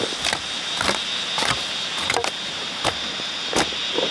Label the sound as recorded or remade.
recorded